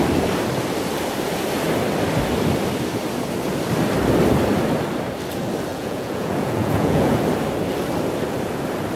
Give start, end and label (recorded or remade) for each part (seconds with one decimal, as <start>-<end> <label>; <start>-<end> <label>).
0.0-5.7 recorded; 5.7-7.2 remade; 7.2-9.0 recorded